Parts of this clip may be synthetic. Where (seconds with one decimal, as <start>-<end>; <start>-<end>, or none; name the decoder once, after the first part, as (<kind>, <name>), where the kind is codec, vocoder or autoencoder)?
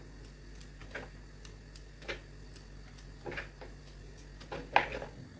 none